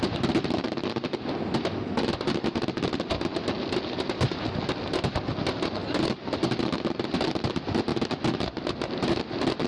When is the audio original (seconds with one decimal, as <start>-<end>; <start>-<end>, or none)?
0.0-9.7